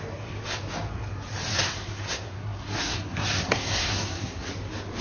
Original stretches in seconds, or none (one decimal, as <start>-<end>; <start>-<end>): 0.0-1.5; 4.5-5.0